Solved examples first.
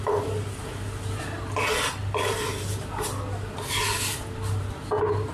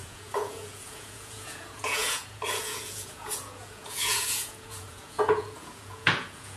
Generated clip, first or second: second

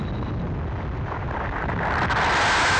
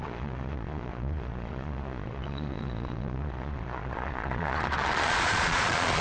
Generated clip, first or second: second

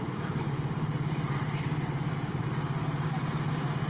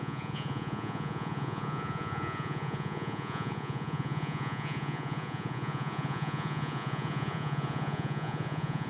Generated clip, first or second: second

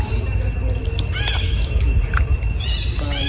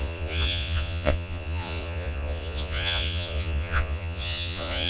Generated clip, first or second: second